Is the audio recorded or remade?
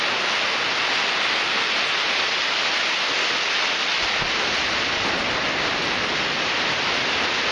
recorded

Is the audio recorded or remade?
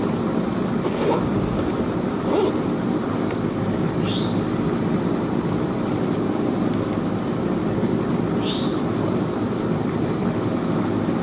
recorded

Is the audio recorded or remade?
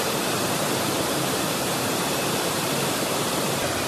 remade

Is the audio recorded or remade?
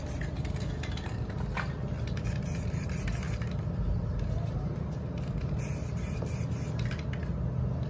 recorded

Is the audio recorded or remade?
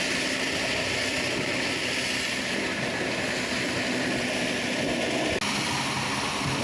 recorded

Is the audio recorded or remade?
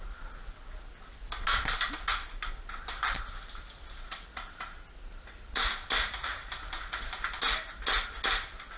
recorded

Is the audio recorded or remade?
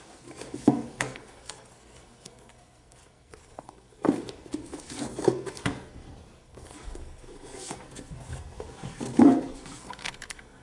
remade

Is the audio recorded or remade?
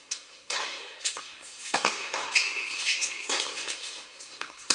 remade